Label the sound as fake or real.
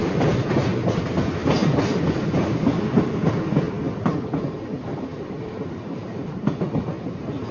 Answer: real